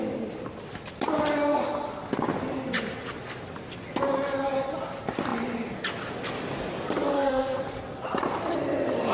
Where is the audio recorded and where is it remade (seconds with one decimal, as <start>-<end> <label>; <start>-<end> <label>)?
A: 0.0-7.1 recorded; 7.1-7.6 remade; 7.6-9.1 recorded